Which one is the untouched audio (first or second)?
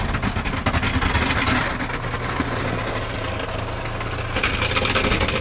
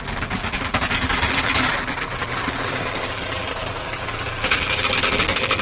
first